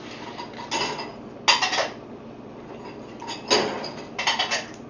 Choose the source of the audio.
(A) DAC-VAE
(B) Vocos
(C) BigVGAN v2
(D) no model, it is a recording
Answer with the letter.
D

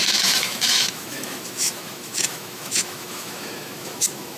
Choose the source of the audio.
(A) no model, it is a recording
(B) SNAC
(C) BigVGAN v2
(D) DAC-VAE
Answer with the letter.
D